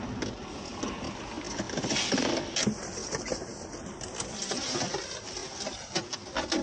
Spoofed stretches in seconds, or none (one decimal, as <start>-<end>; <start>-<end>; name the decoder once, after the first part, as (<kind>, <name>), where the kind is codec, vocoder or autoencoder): none